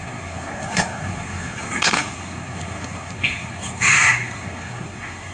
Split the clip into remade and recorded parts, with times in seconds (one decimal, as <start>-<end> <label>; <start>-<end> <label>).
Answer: 0.0-5.3 remade

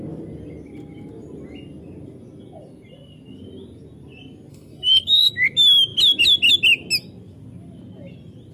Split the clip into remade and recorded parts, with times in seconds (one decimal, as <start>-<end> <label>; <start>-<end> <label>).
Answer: 0.0-4.5 recorded; 4.5-5.3 remade; 5.3-8.5 recorded

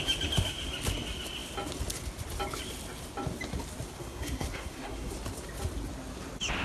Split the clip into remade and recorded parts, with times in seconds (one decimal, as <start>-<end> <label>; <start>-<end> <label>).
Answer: 0.0-4.0 recorded; 4.0-5.1 remade; 5.1-6.6 recorded

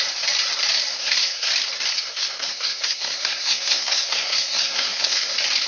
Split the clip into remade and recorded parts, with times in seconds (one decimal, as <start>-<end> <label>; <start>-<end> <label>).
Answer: 0.0-0.9 recorded; 0.9-1.5 remade; 1.5-1.9 recorded; 1.9-5.3 remade; 5.3-5.7 recorded

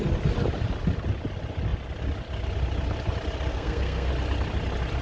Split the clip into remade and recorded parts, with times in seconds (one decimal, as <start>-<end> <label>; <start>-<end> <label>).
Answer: 0.0-3.5 recorded; 3.5-4.1 remade; 4.1-5.0 recorded

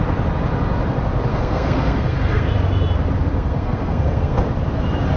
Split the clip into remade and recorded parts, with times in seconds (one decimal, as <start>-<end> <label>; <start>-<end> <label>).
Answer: 0.0-1.3 recorded; 1.3-2.5 remade; 2.5-3.3 recorded; 3.3-4.4 remade; 4.4-5.2 recorded

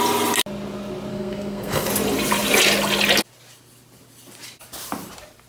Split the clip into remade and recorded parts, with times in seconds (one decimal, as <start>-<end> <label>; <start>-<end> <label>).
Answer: 0.0-1.1 recorded; 1.1-1.9 remade; 1.9-5.5 recorded

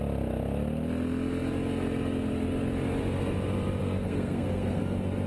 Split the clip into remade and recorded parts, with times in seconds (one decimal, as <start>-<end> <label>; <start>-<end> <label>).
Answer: 0.0-3.8 recorded; 3.8-4.8 remade; 4.8-5.3 recorded